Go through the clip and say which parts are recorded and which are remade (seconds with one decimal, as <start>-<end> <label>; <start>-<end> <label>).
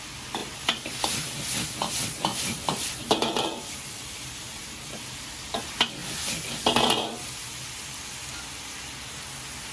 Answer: 0.0-0.4 recorded; 0.4-1.0 remade; 1.0-2.3 recorded; 2.3-5.3 remade; 5.3-9.7 recorded